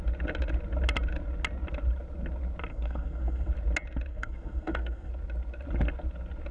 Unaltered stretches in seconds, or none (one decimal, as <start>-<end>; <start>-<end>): 0.0-2.7; 3.5-4.1; 5.1-6.5